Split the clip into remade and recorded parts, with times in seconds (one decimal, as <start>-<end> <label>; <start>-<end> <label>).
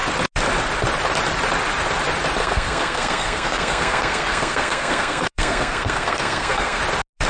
0.0-2.4 recorded; 2.4-6.8 remade; 6.8-7.3 recorded